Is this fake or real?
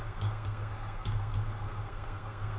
fake